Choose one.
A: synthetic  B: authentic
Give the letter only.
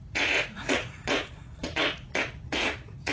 A